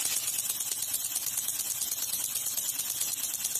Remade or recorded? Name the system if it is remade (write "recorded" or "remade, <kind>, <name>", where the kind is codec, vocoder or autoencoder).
recorded